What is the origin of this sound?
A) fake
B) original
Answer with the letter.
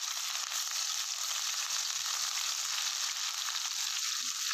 B